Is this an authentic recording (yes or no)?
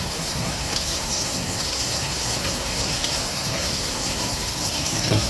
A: no